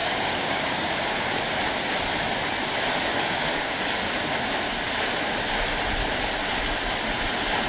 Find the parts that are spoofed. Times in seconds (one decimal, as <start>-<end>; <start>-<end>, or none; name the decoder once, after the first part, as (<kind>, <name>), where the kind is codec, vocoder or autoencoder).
0.0-1.4 (codec, DAC); 3.1-3.8